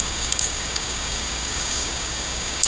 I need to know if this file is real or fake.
fake